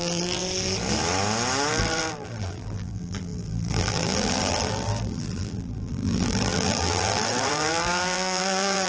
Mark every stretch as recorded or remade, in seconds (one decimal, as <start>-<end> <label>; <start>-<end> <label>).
0.0-0.4 remade; 0.4-1.7 recorded; 1.7-8.9 remade